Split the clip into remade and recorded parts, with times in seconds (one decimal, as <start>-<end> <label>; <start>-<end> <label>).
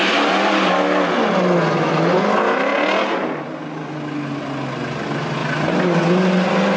0.0-6.8 recorded